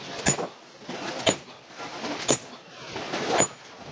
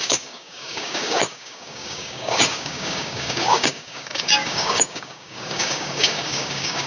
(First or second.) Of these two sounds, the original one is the first